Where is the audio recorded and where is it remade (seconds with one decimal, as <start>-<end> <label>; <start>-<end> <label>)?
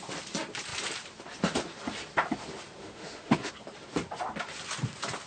0.0-2.8 recorded; 2.8-3.5 remade; 3.5-5.3 recorded